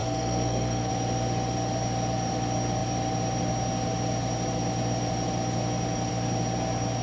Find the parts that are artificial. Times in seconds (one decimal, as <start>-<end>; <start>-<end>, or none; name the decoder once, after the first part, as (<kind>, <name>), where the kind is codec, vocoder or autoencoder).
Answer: 0.0-0.9 (codec, SNAC)